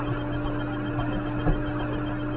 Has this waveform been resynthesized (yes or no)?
no